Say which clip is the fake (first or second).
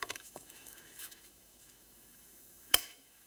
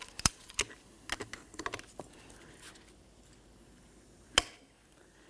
first